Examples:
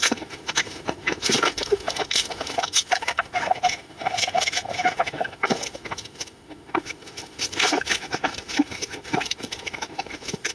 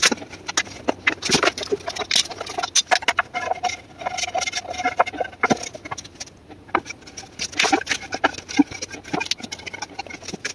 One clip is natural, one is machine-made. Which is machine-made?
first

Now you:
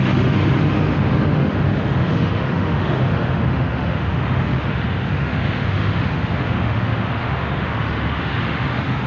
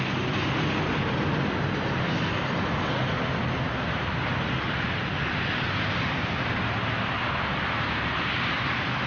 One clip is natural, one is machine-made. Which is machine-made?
first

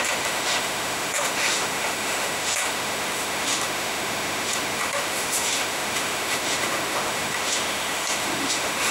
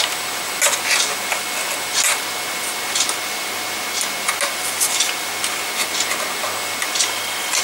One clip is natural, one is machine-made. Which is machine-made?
first